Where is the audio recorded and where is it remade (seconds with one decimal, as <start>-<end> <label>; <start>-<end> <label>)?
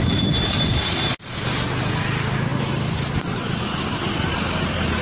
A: 0.0-5.0 recorded